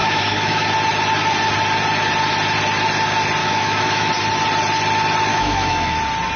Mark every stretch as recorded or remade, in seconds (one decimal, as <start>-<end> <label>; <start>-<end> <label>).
0.0-0.7 remade; 0.7-3.4 recorded; 3.4-4.1 remade; 4.1-5.3 recorded; 5.3-6.0 remade; 6.0-6.4 recorded